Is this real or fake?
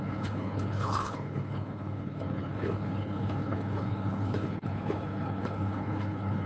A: fake